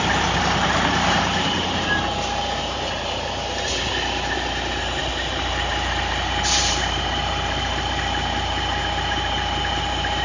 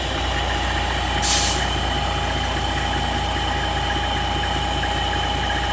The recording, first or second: second